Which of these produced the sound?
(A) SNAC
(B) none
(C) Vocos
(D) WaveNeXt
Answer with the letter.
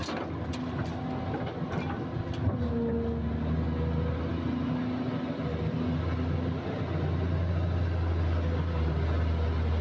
B